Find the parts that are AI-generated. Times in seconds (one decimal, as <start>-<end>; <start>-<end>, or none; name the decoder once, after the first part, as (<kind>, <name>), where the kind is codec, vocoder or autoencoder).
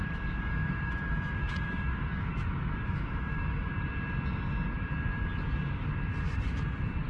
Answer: 0.0-3.7 (autoencoder, DAC-VAE)